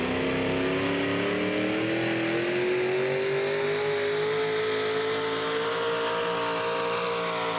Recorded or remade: recorded